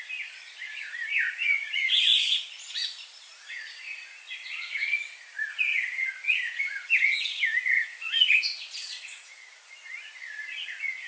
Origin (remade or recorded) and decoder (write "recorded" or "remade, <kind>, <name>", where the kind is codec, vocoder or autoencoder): remade, vocoder, Vocos